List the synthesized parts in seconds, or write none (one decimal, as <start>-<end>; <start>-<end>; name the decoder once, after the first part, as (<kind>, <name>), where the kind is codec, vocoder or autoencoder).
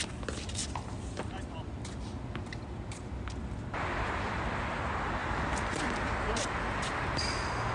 0.6-1.7 (vocoder, BigVGAN v2); 5.2-7.7